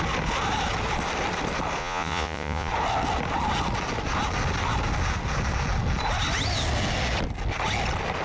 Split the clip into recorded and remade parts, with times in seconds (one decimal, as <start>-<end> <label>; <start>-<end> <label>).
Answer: 0.0-1.8 recorded; 1.8-2.7 remade; 2.7-8.2 recorded